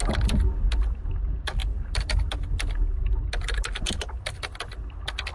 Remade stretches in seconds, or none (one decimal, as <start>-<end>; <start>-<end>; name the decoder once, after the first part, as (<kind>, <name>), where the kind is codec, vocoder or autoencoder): none

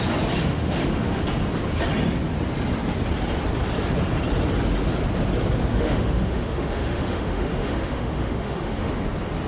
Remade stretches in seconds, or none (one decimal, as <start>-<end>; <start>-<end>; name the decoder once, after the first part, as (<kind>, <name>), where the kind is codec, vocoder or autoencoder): 0.4-1.2 (autoencoder, DAC-VAE); 5.7-8.9

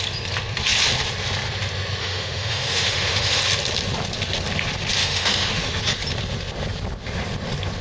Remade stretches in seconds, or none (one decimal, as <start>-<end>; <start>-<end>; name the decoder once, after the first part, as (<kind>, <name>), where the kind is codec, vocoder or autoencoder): 2.0-3.4 (autoencoder, DAC-VAE); 5.0-5.8

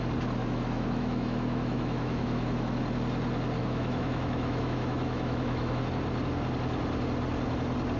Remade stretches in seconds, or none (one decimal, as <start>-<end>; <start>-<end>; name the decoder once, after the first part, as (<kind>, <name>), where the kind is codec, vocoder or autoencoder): 0.4-2.8 (autoencoder, DAC-VAE); 3.6-5.8

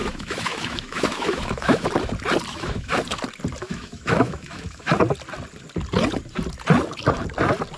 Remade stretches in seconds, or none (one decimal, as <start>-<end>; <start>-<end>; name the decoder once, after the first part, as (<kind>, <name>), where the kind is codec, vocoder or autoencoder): 0.0-1.9 (autoencoder, DAC-VAE); 2.5-3.0; 3.6-4.9